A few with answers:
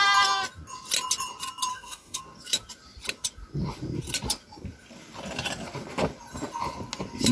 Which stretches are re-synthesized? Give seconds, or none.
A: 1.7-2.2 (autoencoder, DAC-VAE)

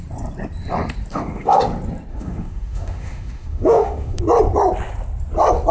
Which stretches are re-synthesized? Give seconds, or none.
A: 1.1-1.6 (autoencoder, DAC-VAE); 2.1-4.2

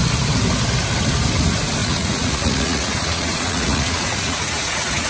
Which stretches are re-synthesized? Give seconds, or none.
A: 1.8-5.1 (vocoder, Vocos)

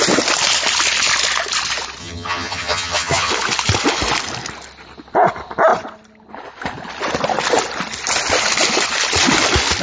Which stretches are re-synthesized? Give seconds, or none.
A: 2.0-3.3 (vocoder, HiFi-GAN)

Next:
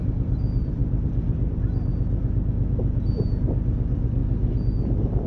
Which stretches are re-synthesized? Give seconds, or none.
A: 0.0-1.9 (vocoder, BigVGAN v2); 3.1-5.3

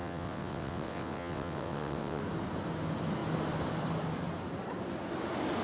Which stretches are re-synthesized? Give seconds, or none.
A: 0.0-2.2 (vocoder, WaveNeXt)

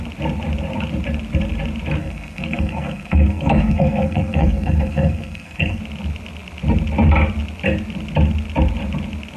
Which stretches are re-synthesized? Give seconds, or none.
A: 2.0-5.8 (codec, SNAC)